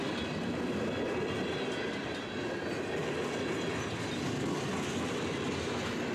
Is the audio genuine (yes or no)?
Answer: yes